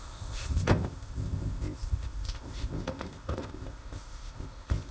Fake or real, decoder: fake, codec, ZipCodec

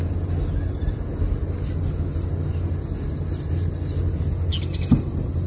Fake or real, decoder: real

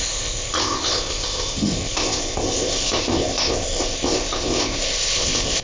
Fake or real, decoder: fake, codec, ZipCodec